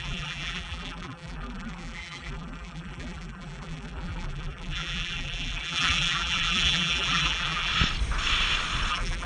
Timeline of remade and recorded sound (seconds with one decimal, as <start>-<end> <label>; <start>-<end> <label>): 0.0-7.7 remade; 7.7-8.9 recorded; 8.9-9.3 remade